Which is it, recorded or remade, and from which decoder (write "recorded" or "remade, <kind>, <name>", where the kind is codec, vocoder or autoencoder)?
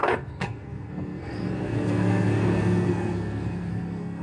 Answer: remade, codec, SNAC